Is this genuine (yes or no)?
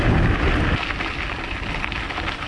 yes